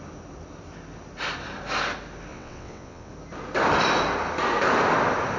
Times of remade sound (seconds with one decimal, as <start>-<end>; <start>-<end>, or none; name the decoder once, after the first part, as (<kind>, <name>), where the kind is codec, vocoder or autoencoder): 2.3-3.1 (vocoder, WaveNeXt)